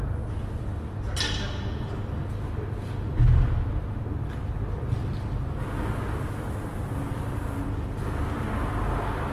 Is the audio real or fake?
real